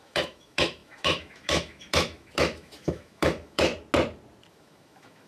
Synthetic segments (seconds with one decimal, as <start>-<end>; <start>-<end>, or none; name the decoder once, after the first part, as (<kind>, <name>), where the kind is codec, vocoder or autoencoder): 0.0-3.7 (autoencoder, DAC-VAE); 4.5-5.3

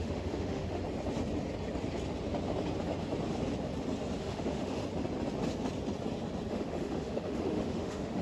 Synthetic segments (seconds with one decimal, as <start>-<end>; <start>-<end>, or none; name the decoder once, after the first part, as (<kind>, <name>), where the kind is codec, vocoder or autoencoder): 0.0-0.8 (autoencoder, DAC-VAE); 4.2-4.8; 6.5-8.2